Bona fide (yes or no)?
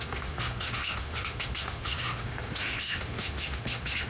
no